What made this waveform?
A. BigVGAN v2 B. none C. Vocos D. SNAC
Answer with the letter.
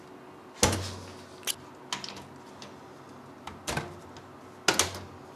B